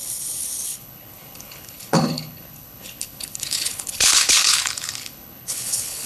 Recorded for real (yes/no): no